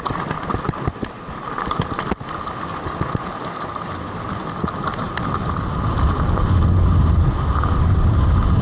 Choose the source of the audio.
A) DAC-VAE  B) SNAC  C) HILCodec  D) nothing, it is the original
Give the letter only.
D